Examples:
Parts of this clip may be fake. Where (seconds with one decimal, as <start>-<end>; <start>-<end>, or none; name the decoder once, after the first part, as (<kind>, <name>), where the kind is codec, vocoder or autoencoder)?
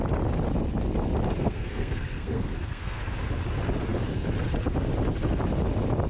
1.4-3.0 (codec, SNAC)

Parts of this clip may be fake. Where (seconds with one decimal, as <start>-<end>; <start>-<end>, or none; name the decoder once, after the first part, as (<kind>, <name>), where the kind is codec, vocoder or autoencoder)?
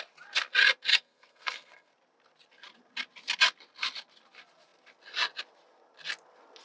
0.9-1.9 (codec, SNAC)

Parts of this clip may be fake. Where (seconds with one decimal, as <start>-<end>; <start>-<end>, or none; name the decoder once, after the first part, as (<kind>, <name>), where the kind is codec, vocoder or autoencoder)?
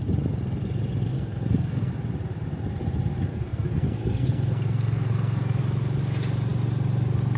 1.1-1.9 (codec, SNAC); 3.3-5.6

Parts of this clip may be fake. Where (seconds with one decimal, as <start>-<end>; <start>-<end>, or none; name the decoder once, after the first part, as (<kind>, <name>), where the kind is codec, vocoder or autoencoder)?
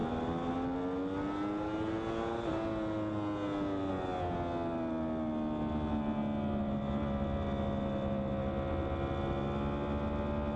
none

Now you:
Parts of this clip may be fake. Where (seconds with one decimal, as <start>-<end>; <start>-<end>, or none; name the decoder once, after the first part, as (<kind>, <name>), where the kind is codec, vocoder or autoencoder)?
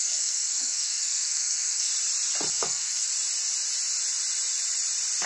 0.0-1.9 (codec, SNAC); 2.5-3.1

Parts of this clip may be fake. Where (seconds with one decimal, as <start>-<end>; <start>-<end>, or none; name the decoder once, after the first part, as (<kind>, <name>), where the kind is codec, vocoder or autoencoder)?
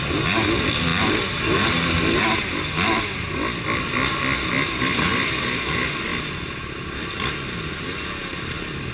none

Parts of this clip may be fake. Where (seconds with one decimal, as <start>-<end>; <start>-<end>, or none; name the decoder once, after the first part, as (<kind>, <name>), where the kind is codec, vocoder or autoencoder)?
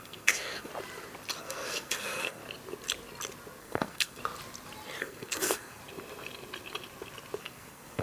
0.0-0.7 (codec, SNAC); 1.4-2.4; 3.6-4.2; 5.0-5.8; 7.4-8.0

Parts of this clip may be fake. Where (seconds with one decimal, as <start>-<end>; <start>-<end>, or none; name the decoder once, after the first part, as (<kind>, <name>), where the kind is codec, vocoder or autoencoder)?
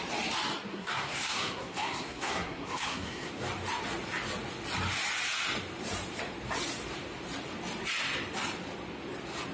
0.7-3.3 (codec, SNAC)